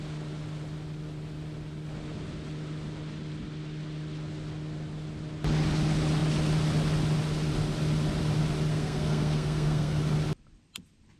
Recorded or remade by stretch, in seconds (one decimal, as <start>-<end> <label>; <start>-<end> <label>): 0.0-8.7 recorded; 8.7-10.0 remade; 10.0-11.2 recorded